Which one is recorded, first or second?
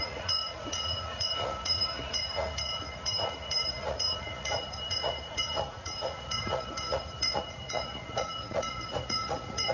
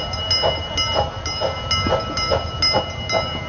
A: second